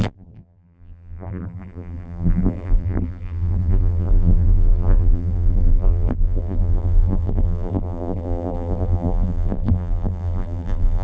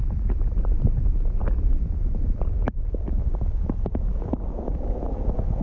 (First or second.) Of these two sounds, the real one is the second